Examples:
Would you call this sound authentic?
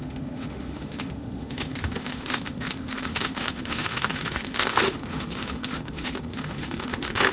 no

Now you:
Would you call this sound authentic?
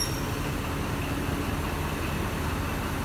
yes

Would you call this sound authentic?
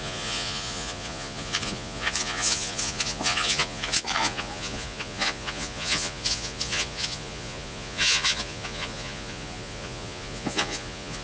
no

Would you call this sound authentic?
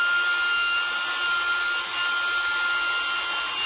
yes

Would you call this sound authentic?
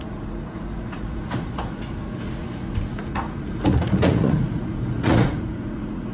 no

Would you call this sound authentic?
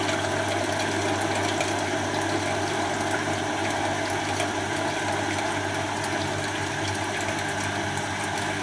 yes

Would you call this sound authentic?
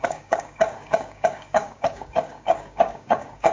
no